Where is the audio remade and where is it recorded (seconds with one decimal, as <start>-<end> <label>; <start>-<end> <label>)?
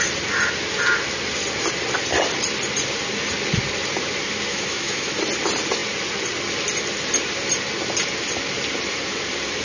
0.0-4.5 recorded; 4.5-5.1 remade; 5.1-9.6 recorded